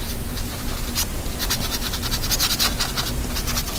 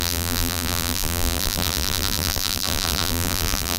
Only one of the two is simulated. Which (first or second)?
second